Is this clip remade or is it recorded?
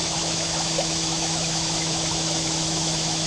remade